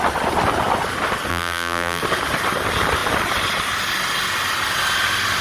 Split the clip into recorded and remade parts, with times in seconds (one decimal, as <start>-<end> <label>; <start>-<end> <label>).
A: 0.0-1.3 recorded; 1.3-2.0 remade; 2.0-5.4 recorded